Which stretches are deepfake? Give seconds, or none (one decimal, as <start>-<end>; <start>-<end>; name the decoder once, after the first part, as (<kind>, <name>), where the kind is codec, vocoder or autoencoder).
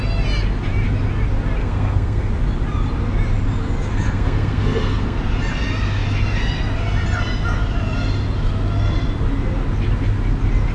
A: 1.6-2.3 (codec, SNAC); 3.9-5.2